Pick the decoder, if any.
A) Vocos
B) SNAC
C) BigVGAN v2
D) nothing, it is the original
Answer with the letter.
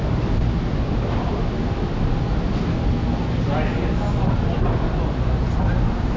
D